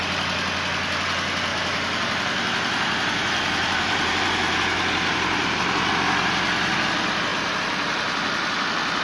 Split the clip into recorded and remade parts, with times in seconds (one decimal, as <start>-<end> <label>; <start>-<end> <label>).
0.0-1.5 recorded; 1.5-5.9 remade; 5.9-7.3 recorded; 7.3-9.0 remade